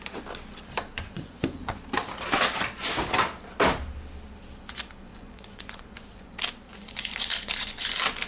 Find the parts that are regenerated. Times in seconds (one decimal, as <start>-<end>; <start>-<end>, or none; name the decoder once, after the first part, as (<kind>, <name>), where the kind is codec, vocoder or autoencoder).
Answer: 0.9-1.8 (vocoder, Vocos); 5.1-6.3; 6.7-7.9